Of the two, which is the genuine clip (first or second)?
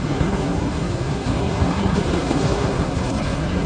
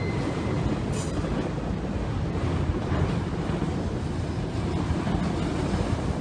second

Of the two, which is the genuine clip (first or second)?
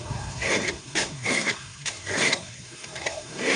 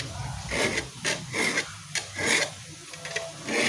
second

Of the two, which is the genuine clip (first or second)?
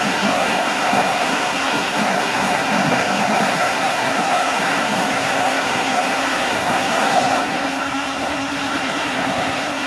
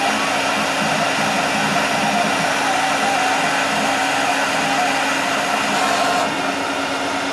second